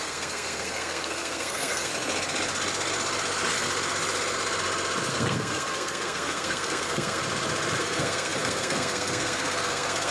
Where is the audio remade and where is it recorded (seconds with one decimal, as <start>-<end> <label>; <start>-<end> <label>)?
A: 0.0-1.9 remade; 1.9-5.1 recorded; 5.1-7.2 remade; 7.2-7.8 recorded; 7.8-10.1 remade